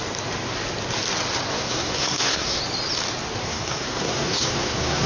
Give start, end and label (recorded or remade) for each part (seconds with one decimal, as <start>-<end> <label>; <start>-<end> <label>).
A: 0.0-1.5 recorded; 1.5-2.6 remade; 2.6-3.4 recorded; 3.4-5.1 remade